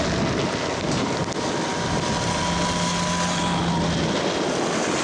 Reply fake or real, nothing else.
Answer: real